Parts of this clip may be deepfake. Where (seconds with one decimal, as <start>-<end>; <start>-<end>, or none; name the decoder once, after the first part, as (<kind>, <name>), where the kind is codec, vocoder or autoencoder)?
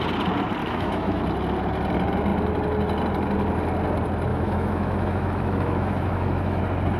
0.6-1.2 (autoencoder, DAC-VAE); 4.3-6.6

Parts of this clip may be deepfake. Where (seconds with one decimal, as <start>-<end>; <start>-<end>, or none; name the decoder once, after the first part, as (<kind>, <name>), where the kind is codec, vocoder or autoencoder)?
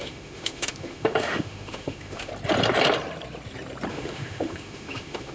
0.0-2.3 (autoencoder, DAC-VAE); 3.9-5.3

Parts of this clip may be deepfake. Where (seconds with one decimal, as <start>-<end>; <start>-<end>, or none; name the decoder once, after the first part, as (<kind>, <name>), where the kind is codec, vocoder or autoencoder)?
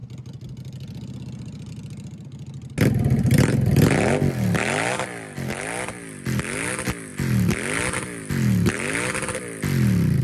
none